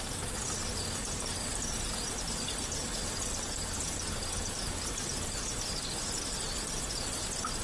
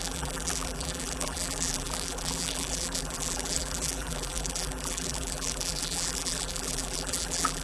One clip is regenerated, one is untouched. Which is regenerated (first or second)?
second